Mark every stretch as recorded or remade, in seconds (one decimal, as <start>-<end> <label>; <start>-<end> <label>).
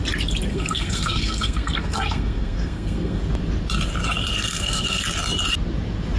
0.0-0.5 recorded; 0.5-3.2 remade; 3.2-4.3 recorded; 4.3-5.0 remade; 5.0-6.2 recorded